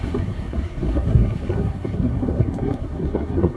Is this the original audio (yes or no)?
no